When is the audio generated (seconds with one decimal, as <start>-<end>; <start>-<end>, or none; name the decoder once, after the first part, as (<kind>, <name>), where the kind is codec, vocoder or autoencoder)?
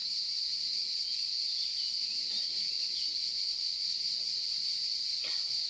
2.8-5.7 (vocoder, BigVGAN v2)